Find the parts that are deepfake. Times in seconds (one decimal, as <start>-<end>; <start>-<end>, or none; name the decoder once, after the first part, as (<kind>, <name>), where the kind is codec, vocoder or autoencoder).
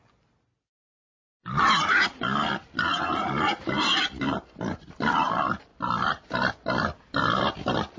none